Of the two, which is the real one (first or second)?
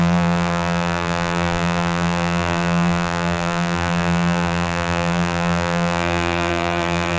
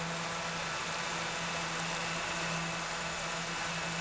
second